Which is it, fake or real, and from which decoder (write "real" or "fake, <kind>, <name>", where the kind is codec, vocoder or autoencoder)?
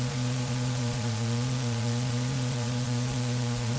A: fake, vocoder, Vocos